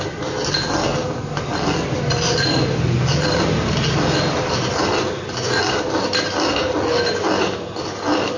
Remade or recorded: recorded